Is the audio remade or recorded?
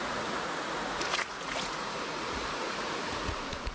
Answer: remade